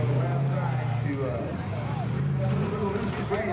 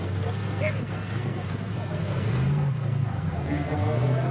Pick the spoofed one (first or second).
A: second